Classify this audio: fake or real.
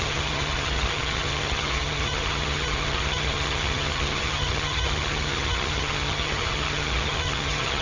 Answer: fake